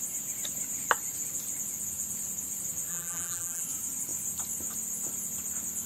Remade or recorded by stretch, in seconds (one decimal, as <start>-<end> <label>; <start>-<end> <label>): 0.0-2.9 recorded; 2.9-3.6 remade; 3.6-5.9 recorded